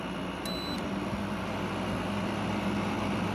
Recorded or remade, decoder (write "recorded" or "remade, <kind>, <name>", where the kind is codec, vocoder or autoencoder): recorded